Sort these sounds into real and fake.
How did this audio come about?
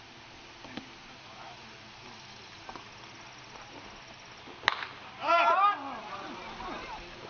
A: real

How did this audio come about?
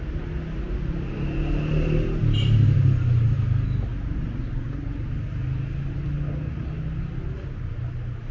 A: real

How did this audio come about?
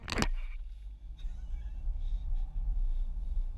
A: real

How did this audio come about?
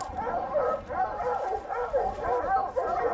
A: real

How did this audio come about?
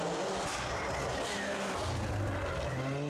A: real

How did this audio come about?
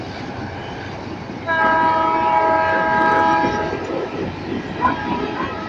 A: real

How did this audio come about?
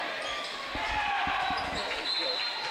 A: real